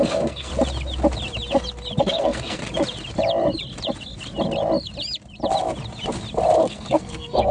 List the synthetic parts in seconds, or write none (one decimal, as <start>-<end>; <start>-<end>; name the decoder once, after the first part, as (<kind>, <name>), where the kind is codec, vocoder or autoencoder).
0.0-0.5 (codec, SNAC); 2.0-2.6; 6.7-7.5

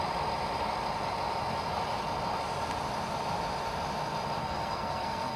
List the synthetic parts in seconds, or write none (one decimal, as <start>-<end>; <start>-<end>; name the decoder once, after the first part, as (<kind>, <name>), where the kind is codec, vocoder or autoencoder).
4.4-5.4 (codec, SNAC)

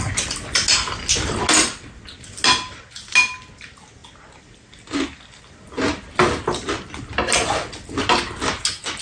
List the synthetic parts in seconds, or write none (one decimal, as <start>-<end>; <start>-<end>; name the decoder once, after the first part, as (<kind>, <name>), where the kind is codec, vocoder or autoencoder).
none

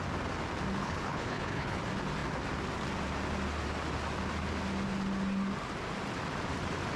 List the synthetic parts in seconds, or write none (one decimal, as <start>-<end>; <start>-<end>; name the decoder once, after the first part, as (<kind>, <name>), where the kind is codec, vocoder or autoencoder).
0.8-1.8 (codec, HILCodec)

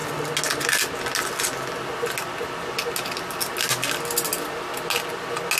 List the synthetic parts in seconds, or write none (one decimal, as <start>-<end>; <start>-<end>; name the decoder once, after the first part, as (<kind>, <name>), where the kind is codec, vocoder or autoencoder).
none